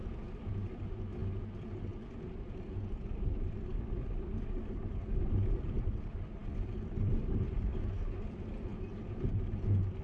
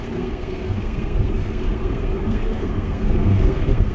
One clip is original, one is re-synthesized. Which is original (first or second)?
first